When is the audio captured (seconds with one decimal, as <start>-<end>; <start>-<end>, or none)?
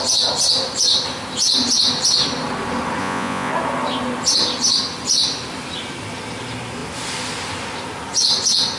0.0-3.0; 3.5-8.8